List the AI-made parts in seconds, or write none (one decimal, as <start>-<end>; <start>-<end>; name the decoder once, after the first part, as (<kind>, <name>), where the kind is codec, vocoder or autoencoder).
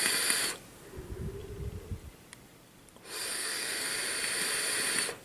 3.3-3.9 (codec, SNAC)